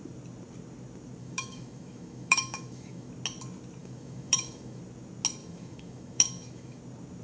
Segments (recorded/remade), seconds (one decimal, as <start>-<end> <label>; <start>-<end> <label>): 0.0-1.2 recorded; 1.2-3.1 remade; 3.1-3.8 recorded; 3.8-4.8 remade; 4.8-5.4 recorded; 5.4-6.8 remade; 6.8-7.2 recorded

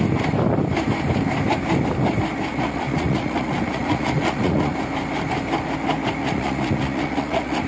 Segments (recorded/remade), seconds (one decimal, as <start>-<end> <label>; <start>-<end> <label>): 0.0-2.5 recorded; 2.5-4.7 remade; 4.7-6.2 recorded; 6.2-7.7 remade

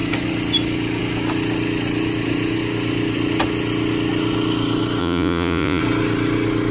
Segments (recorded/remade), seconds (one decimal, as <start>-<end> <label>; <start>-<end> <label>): 0.0-5.0 recorded; 5.0-5.8 remade; 5.8-6.7 recorded

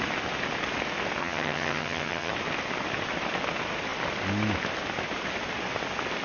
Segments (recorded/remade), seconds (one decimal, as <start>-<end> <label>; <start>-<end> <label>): 0.0-1.2 recorded; 1.2-2.3 remade; 2.3-6.2 recorded

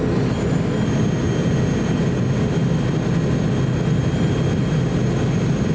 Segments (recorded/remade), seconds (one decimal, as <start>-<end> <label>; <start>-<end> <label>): 0.0-5.7 recorded